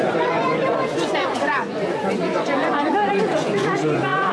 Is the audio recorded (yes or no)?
no